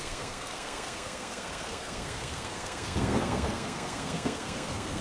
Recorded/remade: remade